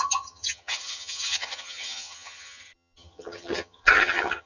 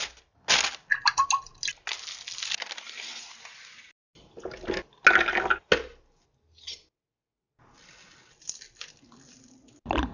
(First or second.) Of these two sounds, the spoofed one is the first